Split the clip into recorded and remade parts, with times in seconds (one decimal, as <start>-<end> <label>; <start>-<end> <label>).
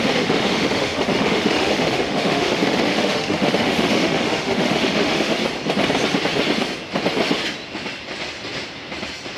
0.0-5.4 remade; 5.4-9.4 recorded